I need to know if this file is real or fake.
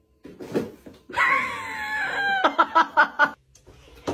real